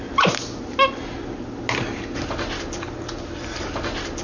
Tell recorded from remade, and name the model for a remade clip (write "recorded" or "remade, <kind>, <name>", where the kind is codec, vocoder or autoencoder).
recorded